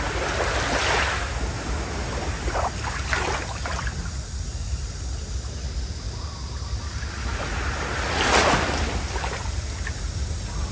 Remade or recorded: recorded